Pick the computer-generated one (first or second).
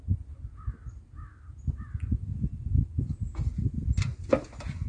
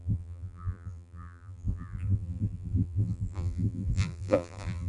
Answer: second